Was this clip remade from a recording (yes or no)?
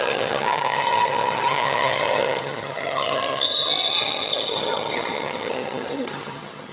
yes